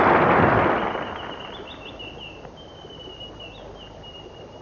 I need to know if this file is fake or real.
real